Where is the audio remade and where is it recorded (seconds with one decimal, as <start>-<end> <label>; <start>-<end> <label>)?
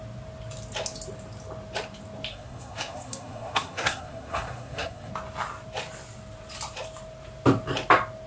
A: 0.0-2.3 recorded; 2.3-5.1 remade; 5.1-8.3 recorded